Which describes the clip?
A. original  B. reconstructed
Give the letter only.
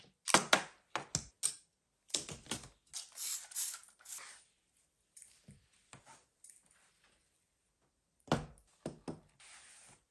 A